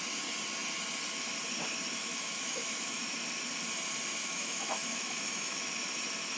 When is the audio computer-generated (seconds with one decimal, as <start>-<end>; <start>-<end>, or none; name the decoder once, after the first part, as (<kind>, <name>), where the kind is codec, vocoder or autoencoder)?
2.0-3.1 (autoencoder, DAC-VAE); 4.2-5.7